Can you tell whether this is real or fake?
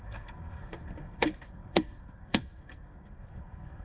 fake